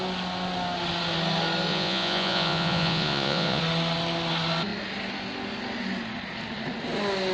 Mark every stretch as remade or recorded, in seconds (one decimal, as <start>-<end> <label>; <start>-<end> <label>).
0.0-1.7 recorded; 1.7-3.6 remade; 3.6-7.3 recorded

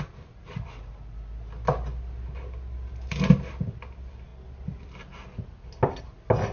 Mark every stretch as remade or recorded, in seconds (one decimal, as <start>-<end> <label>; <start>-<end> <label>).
0.0-6.5 recorded

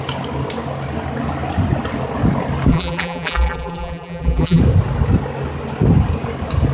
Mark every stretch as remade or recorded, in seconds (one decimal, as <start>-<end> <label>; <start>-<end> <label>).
0.0-2.7 recorded; 2.7-4.6 remade; 4.6-6.7 recorded

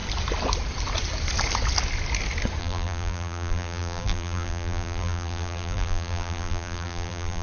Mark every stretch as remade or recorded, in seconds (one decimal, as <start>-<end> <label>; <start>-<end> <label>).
0.0-2.6 recorded; 2.6-7.4 remade

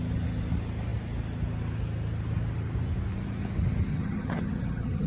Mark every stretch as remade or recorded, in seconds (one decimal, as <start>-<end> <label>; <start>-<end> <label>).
0.0-3.9 recorded; 3.9-5.1 remade

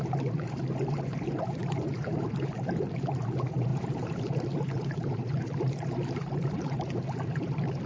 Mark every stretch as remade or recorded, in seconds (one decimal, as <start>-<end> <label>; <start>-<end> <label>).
0.0-7.9 remade

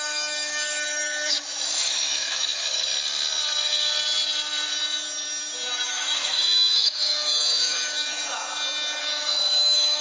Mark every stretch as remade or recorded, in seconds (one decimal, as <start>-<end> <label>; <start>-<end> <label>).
0.0-2.9 remade; 2.9-5.9 recorded; 5.9-8.2 remade; 8.2-9.0 recorded; 9.0-10.0 remade

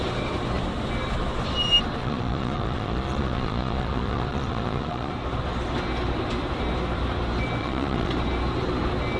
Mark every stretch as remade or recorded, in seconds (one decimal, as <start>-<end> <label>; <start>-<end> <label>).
0.0-2.0 recorded; 2.0-5.1 remade; 5.1-7.6 recorded; 7.6-8.1 remade; 8.1-9.2 recorded